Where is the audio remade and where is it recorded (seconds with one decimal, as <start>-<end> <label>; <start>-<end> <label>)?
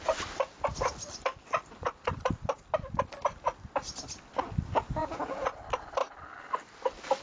0.0-5.0 recorded; 5.0-5.6 remade; 5.6-7.2 recorded